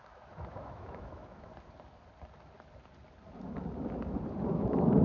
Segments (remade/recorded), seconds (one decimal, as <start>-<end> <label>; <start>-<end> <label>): 0.0-1.5 remade; 1.5-4.5 recorded; 4.5-5.0 remade